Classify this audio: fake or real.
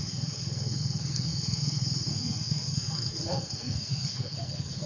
fake